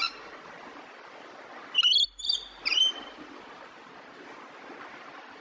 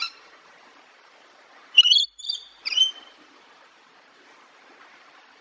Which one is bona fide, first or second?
first